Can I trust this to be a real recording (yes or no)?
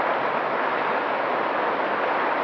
yes